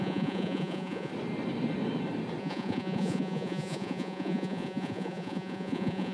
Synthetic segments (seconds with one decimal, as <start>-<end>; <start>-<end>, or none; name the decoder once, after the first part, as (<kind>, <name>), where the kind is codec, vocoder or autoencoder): 0.0-1.1 (vocoder, Vocos); 2.4-6.1